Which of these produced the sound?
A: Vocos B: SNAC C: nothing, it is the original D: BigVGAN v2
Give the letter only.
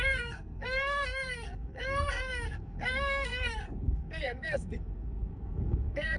B